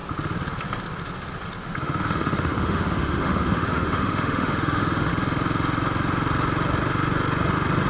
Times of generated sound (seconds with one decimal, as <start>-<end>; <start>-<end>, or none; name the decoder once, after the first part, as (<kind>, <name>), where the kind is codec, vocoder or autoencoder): 1.8-5.1 (autoencoder, DAC-VAE)